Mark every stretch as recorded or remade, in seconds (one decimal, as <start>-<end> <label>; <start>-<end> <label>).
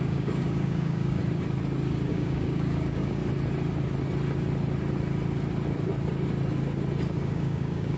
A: 0.0-1.2 remade; 1.2-2.1 recorded; 2.1-3.2 remade; 3.2-7.1 recorded; 7.1-8.0 remade